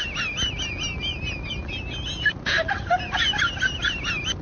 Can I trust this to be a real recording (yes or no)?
yes